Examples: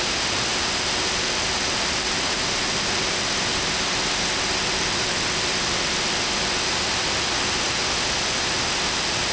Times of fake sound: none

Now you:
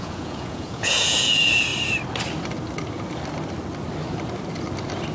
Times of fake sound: 0.0-1.7 (vocoder, Vocos)

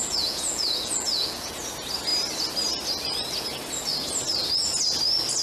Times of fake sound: 0.0-1.6 (vocoder, Vocos)

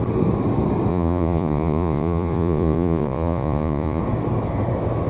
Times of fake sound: 0.9-4.0 (vocoder, Vocos)

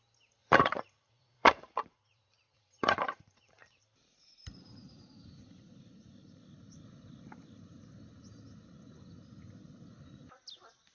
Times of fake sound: 0.4-3.8 (vocoder, Vocos)

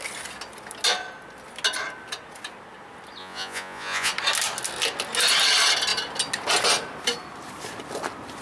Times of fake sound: 3.2-4.1 (vocoder, Vocos)